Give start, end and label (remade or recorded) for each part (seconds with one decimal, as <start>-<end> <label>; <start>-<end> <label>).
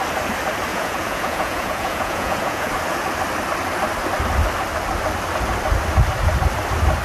0.0-0.7 recorded; 0.7-2.7 remade; 2.7-7.0 recorded